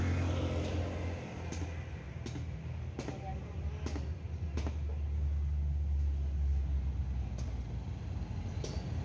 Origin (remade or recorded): recorded